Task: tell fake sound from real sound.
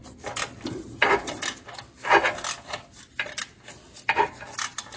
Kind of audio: real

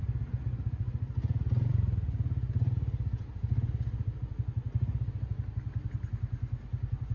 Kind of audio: real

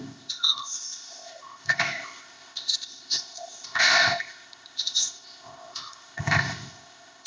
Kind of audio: fake